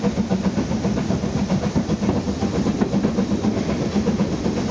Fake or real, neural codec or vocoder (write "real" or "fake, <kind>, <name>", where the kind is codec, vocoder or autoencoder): real